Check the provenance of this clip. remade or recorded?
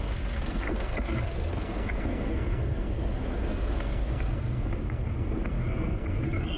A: remade